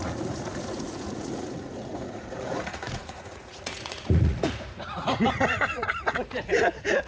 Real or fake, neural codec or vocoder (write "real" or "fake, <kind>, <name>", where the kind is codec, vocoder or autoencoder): fake, vocoder, Vocos